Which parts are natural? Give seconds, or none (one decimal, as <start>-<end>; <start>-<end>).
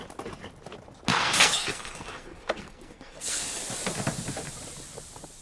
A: 0.0-1.1; 3.6-5.4